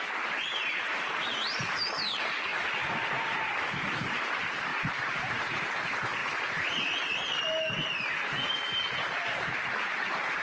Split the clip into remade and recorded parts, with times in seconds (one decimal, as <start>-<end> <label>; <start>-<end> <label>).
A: 0.0-2.5 remade; 2.5-4.1 recorded; 4.1-6.2 remade; 6.2-8.1 recorded; 8.1-10.4 remade